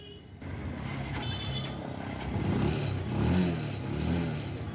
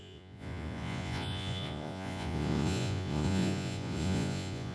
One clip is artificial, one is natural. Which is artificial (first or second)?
second